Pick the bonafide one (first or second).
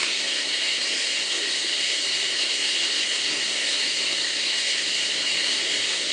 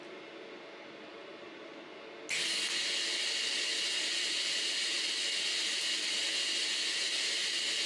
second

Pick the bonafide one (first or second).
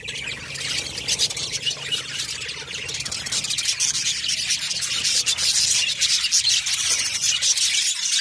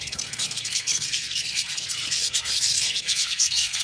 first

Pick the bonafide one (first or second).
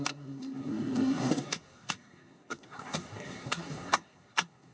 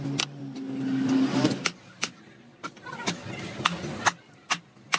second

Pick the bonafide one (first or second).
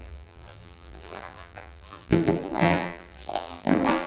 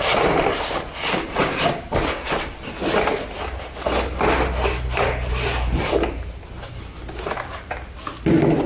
second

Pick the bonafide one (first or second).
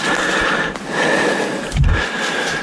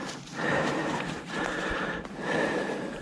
first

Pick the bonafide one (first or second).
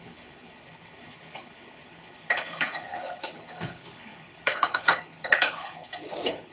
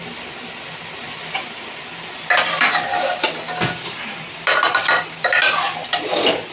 second